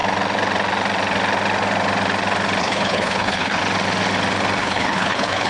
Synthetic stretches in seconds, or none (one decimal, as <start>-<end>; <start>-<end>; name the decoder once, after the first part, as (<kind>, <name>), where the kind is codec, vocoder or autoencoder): 2.6-3.6 (codec, HILCodec); 4.6-5.5